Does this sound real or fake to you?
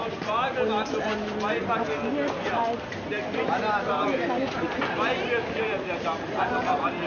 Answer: real